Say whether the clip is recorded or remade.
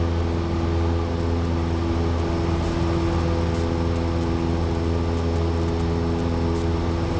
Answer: recorded